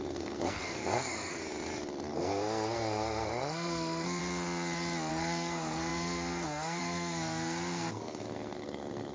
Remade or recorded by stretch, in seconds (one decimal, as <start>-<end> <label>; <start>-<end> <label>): 0.0-1.4 remade; 1.4-2.1 recorded; 2.1-4.2 remade; 4.2-5.1 recorded; 5.1-9.1 remade